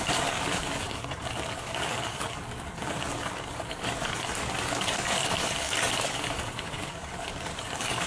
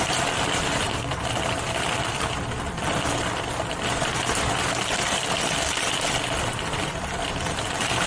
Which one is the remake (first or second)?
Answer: first